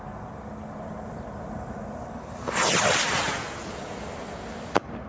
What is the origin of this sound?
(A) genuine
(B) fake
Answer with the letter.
A